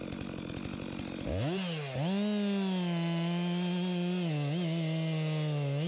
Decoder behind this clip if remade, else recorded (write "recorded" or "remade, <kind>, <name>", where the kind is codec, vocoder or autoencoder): recorded